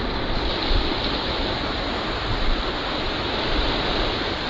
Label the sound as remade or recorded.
recorded